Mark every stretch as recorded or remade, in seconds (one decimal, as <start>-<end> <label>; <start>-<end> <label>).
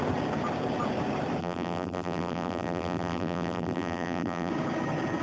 0.0-1.4 recorded; 1.4-4.5 remade; 4.5-5.2 recorded